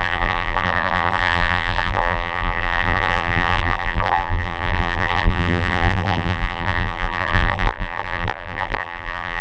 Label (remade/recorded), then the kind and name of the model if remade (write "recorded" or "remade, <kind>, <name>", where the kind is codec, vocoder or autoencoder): remade, vocoder, BigVGAN v2